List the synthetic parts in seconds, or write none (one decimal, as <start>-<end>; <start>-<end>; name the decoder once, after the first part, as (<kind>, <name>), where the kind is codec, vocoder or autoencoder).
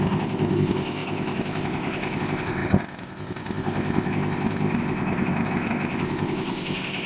0.0-7.1 (codec, ZipCodec)